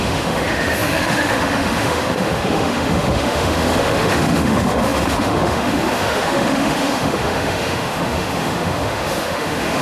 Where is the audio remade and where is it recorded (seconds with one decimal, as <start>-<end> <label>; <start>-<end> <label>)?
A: 0.0-9.8 remade